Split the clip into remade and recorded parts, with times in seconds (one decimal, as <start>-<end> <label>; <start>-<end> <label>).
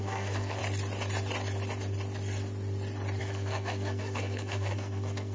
0.0-0.6 remade; 0.6-3.2 recorded; 3.2-5.3 remade